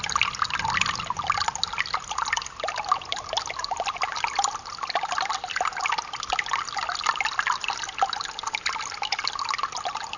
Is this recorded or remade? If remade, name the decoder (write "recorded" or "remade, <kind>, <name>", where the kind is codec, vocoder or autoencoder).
recorded